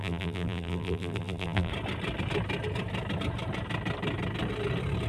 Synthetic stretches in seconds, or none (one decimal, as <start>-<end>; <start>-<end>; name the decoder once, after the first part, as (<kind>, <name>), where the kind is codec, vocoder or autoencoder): 0.0-1.7 (vocoder, BigVGAN v2)